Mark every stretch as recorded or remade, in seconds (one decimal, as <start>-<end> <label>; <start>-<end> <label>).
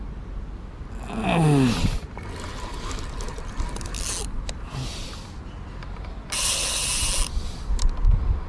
0.0-8.5 recorded